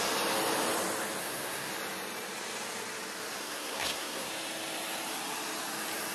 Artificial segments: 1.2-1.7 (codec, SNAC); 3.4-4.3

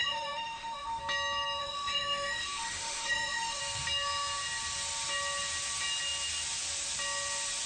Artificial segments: 0.0-1.0 (autoencoder, DAC-VAE); 1.6-3.6

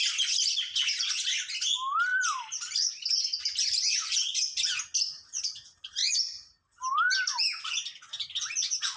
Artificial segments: 2.1-2.9 (vocoder, BigVGAN v2); 6.0-8.3

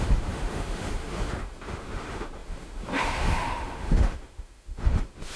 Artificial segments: 0.0-5.4 (autoencoder, DAC-VAE)

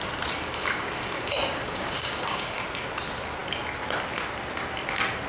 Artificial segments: 0.5-2.6 (codec, DAC)